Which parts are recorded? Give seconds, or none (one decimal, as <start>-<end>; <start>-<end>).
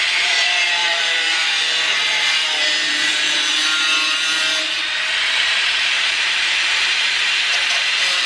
0.0-0.8; 3.5-5.4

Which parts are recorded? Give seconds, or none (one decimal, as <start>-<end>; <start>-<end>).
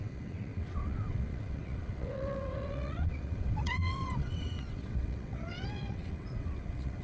none